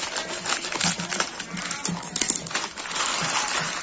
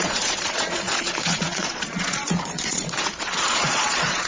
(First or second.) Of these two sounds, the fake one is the second